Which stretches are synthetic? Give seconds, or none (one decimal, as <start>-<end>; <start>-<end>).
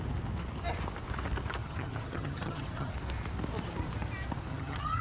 1.6-2.9; 4.5-5.0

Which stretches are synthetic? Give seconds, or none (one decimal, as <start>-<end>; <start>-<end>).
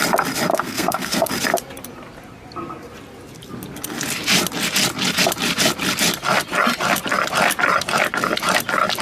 0.5-1.3